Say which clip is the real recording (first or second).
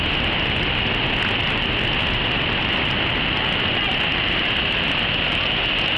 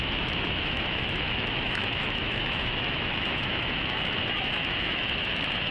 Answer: first